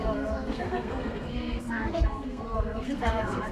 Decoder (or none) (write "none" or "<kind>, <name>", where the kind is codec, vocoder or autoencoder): codec, SNAC